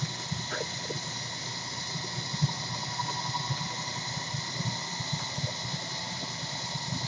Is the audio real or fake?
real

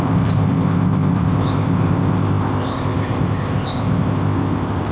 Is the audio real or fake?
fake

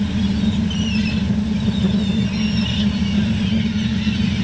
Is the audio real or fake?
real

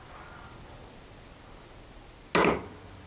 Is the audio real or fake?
real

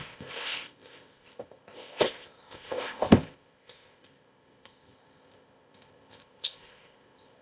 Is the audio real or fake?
fake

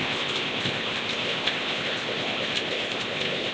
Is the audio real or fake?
fake